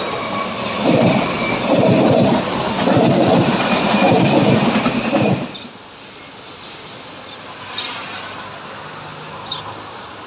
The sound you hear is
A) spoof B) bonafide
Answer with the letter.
B